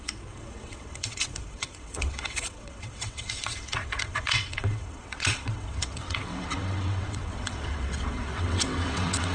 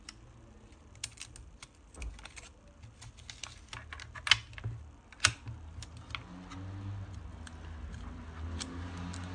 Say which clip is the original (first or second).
second